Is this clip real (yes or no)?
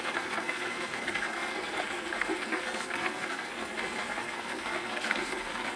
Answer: no